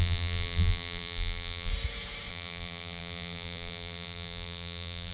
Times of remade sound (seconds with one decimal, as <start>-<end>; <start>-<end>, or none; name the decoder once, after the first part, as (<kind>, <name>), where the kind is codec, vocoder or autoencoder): 0.0-1.7 (vocoder, BigVGAN v2); 2.3-5.1